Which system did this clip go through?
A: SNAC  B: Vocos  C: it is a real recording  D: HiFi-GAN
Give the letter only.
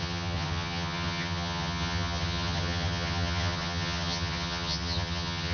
D